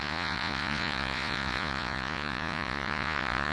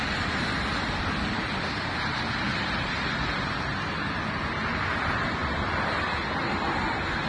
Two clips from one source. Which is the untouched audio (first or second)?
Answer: second